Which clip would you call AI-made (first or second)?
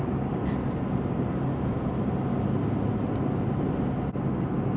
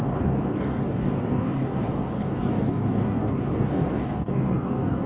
second